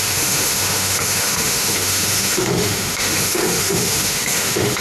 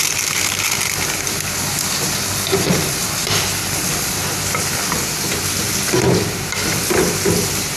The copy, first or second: first